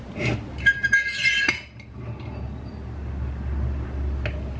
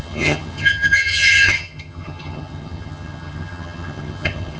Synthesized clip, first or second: second